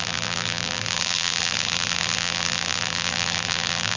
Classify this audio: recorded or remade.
remade